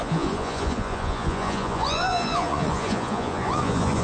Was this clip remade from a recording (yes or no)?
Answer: yes